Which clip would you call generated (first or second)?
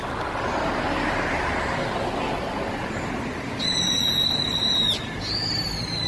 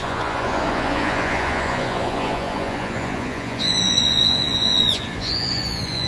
second